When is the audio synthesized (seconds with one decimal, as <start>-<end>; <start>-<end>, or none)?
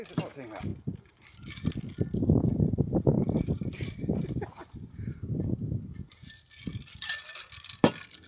0.7-1.7; 2.5-6.5